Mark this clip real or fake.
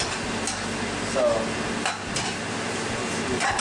real